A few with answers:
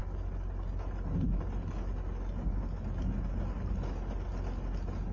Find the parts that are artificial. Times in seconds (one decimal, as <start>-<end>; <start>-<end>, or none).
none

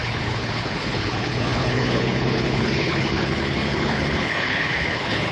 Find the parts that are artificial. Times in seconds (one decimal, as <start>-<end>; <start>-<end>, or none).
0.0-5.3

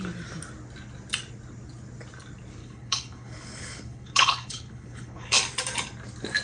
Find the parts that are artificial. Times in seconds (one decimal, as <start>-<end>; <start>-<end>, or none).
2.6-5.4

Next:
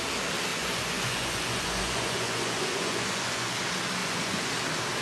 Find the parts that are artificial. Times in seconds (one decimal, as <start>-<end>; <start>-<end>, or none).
0.5-3.5; 4.0-4.5

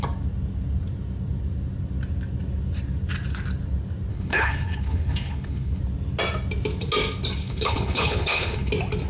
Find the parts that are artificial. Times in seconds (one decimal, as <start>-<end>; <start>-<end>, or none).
4.1-5.8; 7.4-8.7

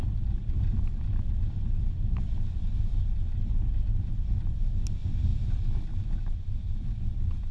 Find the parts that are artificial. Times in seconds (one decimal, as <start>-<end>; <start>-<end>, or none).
none

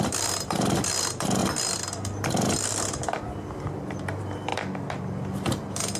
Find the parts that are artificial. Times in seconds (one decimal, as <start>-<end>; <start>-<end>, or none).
0.0-1.4; 1.9-4.5